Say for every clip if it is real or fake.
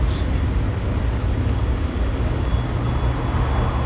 real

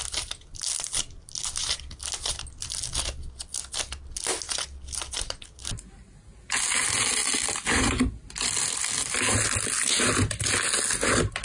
real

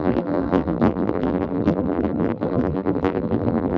fake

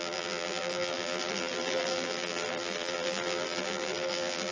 fake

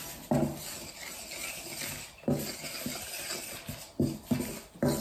real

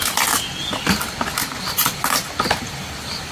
real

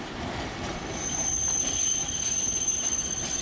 fake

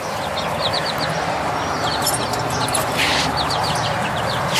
real